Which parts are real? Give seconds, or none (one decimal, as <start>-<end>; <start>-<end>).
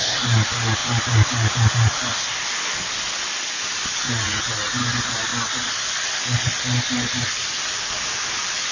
0.0-5.3; 7.4-8.7